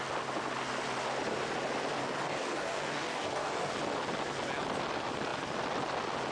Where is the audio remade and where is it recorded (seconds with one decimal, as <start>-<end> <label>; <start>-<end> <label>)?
0.0-2.0 recorded; 2.0-3.7 remade; 3.7-6.3 recorded